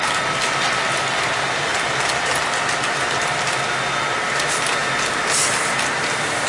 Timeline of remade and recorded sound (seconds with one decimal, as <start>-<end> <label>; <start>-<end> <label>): 0.0-6.5 recorded